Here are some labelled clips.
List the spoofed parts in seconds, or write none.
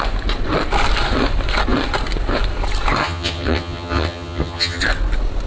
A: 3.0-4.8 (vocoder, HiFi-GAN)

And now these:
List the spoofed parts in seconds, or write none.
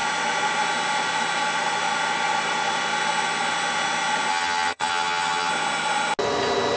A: 4.3-5.5 (vocoder, HiFi-GAN)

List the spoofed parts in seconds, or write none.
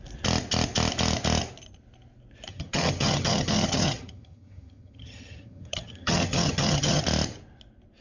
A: 2.5-7.0 (vocoder, HiFi-GAN)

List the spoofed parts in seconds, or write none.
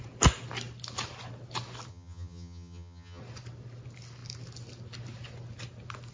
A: 1.9-3.2 (vocoder, HiFi-GAN)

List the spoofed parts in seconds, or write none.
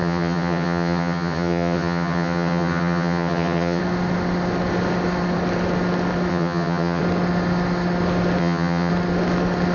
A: 0.0-3.8 (vocoder, HiFi-GAN); 6.3-7.0; 8.4-8.9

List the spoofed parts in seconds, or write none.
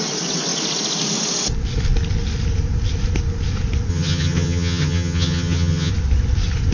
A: 3.9-5.9 (vocoder, HiFi-GAN)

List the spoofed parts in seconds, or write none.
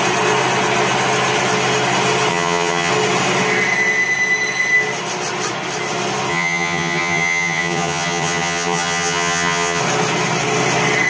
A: 2.3-2.9 (vocoder, HiFi-GAN); 6.3-9.8